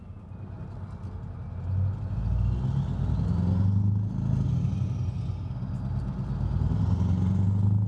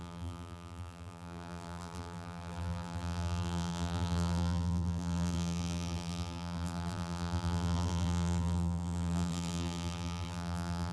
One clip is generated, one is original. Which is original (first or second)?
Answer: first